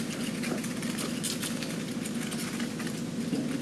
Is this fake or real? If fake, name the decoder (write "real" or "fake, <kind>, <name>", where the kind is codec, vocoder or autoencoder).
real